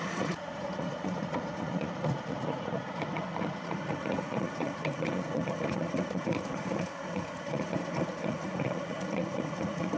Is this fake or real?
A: fake